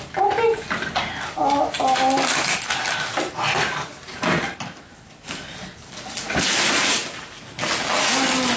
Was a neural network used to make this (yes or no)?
no